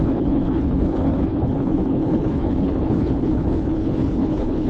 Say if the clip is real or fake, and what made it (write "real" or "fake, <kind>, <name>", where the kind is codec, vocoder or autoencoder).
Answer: fake, codec, HILCodec